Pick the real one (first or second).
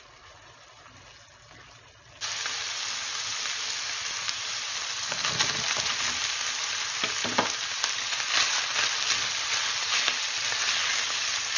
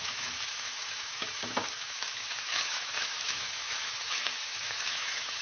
first